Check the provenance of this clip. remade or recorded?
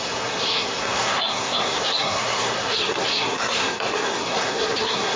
remade